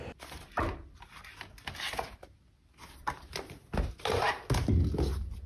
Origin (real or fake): real